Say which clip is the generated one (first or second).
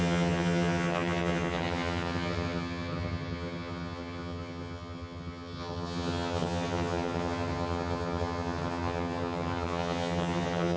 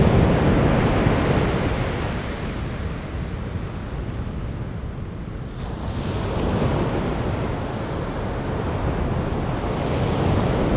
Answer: first